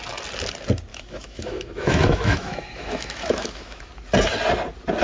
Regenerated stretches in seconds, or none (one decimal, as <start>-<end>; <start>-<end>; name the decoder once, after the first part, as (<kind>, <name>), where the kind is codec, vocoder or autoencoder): 0.9-3.9 (autoencoder, DAC-VAE)

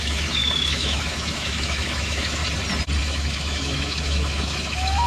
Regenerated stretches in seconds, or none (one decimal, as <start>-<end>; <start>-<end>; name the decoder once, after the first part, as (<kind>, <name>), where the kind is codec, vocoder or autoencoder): 0.0-2.4 (autoencoder, DAC-VAE); 3.0-5.1

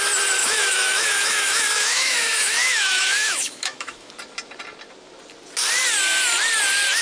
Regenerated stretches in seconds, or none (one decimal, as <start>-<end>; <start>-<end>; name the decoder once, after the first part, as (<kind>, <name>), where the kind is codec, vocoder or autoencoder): 0.4-4.1 (autoencoder, DAC-VAE)

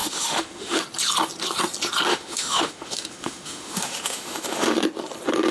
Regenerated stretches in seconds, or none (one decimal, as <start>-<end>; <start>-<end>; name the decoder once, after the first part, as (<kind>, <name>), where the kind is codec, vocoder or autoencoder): 0.0-0.8 (autoencoder, DAC-VAE); 2.1-4.8